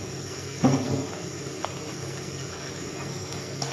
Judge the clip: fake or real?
fake